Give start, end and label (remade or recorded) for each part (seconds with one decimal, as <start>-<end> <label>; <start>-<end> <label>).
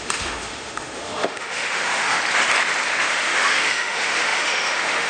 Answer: 0.0-2.2 remade; 2.2-3.0 recorded; 3.0-5.1 remade